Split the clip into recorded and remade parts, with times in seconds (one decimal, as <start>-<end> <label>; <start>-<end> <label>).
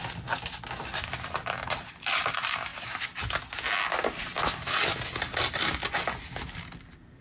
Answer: 0.0-7.2 recorded